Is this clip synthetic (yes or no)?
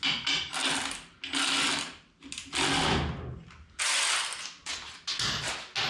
no